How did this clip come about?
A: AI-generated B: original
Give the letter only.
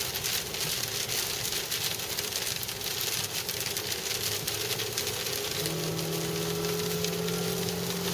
B